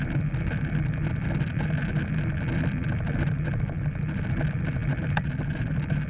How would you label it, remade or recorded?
recorded